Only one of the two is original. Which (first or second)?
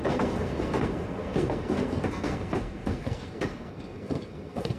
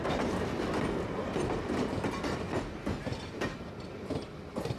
second